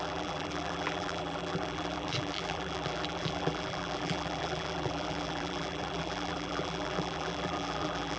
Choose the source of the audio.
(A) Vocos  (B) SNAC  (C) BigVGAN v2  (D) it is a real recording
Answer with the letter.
C